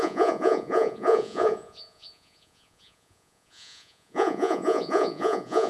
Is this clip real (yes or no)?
no